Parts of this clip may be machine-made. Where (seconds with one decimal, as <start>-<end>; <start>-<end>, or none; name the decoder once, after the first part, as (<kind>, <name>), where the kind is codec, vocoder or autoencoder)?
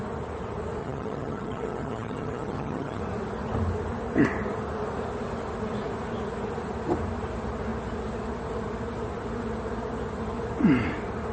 0.8-3.0 (vocoder, HiFi-GAN)